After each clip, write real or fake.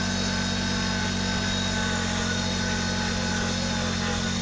real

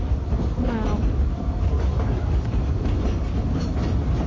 real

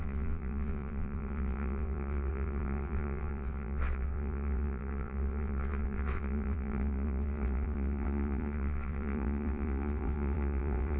fake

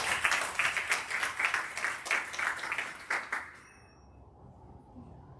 real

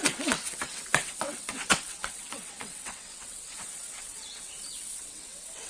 fake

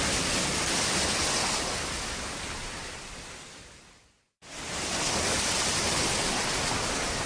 real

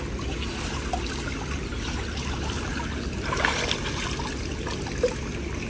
real